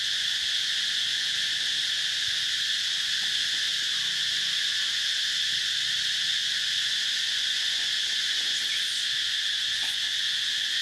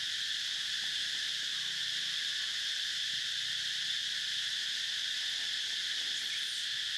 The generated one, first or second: first